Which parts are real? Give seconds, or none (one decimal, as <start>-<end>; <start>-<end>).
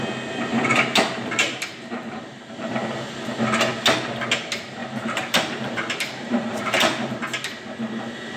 0.0-0.5; 2.7-4.8; 7.1-8.4